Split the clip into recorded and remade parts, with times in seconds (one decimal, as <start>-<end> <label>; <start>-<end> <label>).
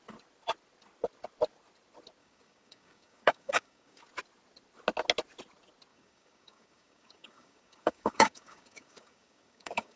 0.0-2.2 recorded; 2.2-4.0 remade; 4.0-5.9 recorded; 5.9-10.0 remade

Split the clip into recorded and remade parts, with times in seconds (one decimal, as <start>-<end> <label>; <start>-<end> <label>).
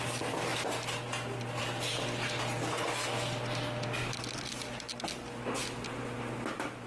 0.0-6.9 recorded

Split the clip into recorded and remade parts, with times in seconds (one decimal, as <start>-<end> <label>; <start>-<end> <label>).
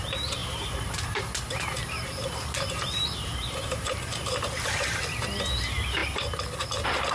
0.0-0.4 recorded; 0.4-1.2 remade; 1.2-1.8 recorded; 1.8-5.0 remade; 5.0-7.1 recorded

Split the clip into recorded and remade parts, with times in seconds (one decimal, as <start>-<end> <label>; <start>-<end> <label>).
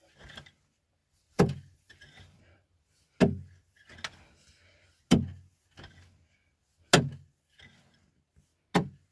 0.0-1.0 recorded; 1.0-2.4 remade; 2.4-9.1 recorded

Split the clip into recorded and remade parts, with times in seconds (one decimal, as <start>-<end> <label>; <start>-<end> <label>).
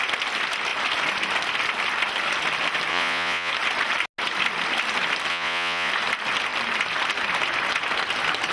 0.0-2.9 recorded; 2.9-3.5 remade; 3.5-5.3 recorded; 5.3-5.9 remade; 5.9-8.5 recorded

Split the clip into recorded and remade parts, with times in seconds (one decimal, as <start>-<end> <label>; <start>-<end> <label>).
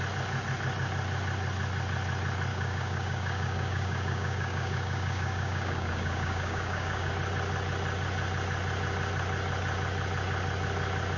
0.0-2.5 recorded; 2.5-7.1 remade; 7.1-11.2 recorded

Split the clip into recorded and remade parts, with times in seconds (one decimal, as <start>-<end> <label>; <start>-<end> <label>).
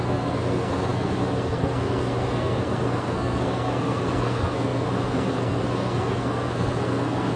0.0-7.4 remade